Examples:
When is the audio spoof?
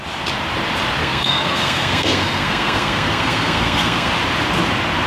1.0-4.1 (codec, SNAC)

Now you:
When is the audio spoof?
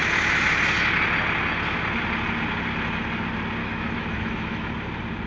3.6-4.7 (autoencoder, DAC-VAE)